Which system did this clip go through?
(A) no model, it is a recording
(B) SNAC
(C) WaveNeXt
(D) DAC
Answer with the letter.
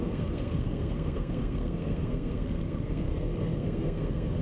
B